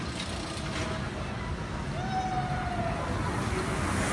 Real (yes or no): yes